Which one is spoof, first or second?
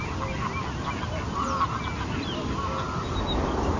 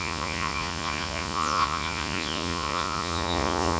second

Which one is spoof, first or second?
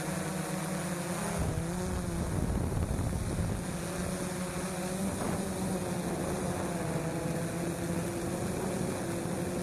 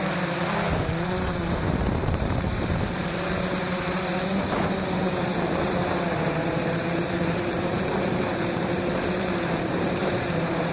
second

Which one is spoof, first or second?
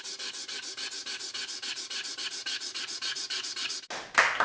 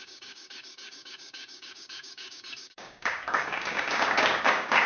second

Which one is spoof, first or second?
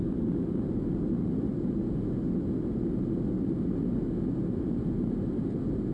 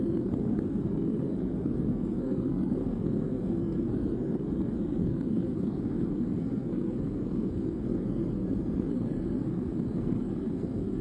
second